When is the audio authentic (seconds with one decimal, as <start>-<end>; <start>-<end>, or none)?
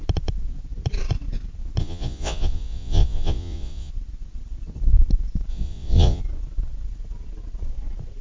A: 0.0-1.8; 3.9-5.5; 6.2-8.2